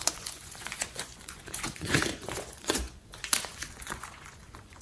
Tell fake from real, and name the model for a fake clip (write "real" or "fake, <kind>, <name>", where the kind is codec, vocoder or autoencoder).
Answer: fake, vocoder, Vocos